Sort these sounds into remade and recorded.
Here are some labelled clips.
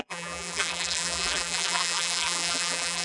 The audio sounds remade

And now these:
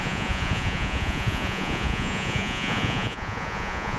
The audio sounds remade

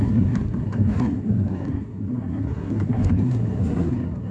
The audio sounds remade